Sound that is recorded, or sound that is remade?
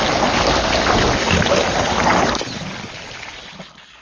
recorded